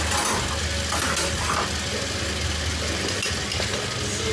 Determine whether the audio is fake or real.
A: real